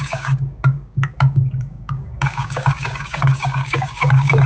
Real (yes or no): no